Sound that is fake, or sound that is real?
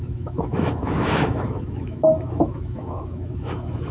fake